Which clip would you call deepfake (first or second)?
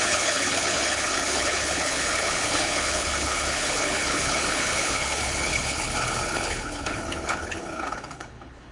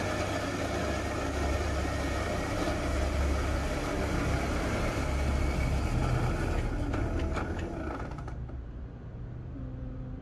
first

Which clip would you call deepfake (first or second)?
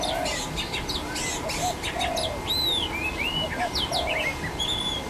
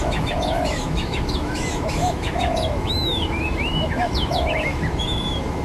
second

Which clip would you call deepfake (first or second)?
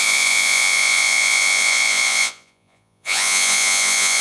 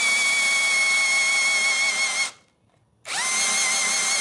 first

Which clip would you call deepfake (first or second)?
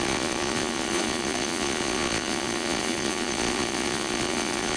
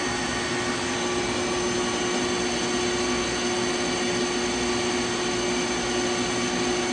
first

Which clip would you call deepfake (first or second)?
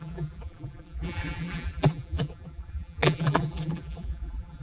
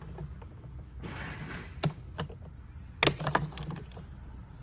first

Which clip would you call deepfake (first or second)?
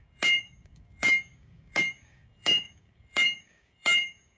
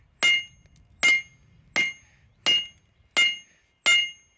first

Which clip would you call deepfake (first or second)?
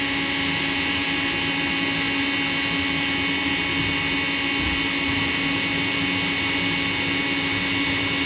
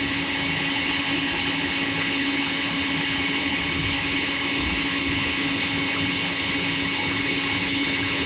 second